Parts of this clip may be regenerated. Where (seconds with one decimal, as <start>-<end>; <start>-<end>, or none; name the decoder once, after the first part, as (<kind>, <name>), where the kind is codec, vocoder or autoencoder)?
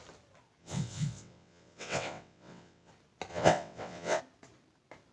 0.6-2.9 (vocoder, WaveNeXt); 3.3-4.2